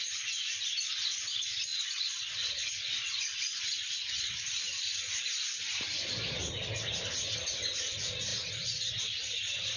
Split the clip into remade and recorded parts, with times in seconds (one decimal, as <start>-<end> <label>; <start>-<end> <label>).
0.0-1.7 recorded; 1.7-4.6 remade; 4.6-9.8 recorded